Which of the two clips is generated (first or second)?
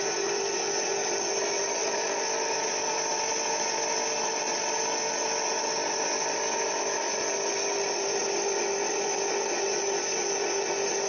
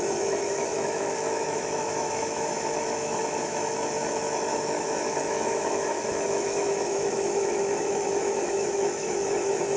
second